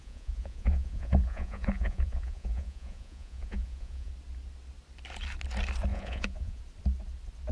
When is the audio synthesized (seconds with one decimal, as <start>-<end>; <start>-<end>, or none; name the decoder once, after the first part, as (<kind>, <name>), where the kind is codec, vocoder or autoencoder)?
0.0-4.1 (vocoder, Vocos); 5.9-6.6